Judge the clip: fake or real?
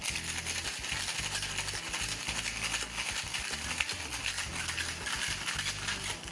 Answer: real